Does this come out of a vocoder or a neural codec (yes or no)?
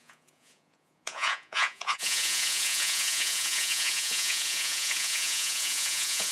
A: yes